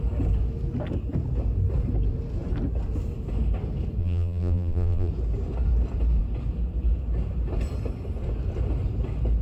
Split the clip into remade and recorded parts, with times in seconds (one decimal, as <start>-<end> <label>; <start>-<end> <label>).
0.0-4.0 recorded; 4.0-5.1 remade; 5.1-9.4 recorded